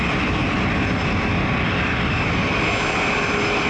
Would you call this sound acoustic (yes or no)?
yes